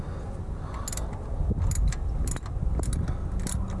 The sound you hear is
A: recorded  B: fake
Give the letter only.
A